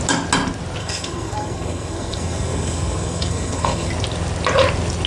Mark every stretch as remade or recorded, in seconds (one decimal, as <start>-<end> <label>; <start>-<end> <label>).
0.0-0.8 recorded; 0.8-3.9 remade; 3.9-5.1 recorded